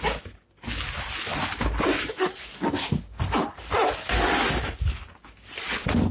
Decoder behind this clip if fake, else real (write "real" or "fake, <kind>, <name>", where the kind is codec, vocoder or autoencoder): real